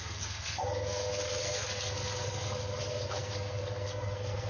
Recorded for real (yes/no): no